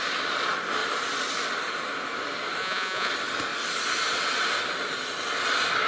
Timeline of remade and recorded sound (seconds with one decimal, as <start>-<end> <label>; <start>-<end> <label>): 0.0-2.6 recorded; 2.6-3.1 remade; 3.1-5.9 recorded